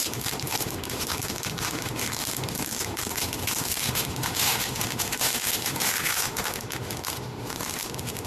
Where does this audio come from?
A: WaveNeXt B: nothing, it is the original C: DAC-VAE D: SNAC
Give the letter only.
C